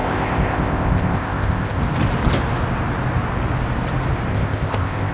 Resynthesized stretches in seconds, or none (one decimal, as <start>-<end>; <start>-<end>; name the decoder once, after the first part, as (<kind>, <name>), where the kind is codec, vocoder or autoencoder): 0.0-1.8 (codec, ZipCodec); 4.3-5.1